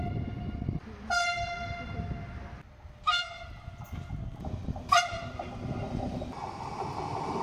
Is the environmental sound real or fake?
real